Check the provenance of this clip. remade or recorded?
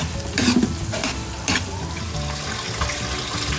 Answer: recorded